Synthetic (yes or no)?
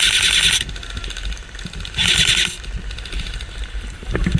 no